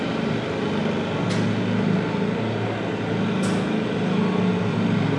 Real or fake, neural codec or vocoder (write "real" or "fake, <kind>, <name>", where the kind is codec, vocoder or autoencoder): real